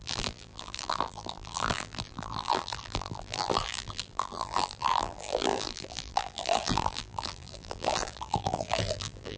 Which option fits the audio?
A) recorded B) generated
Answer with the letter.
B